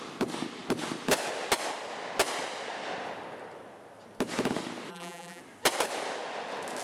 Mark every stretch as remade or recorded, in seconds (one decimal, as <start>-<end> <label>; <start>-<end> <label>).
0.0-4.9 recorded; 4.9-5.4 remade; 5.4-6.8 recorded